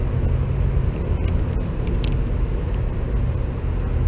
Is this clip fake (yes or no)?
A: no